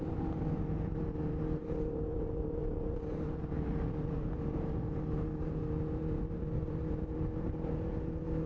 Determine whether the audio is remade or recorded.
remade